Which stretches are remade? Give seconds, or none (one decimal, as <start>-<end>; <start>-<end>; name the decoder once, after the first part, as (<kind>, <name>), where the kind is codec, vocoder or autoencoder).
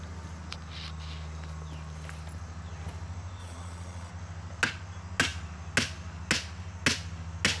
3.4-4.1 (vocoder, Vocos)